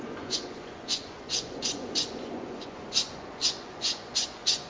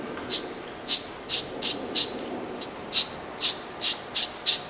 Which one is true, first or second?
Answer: second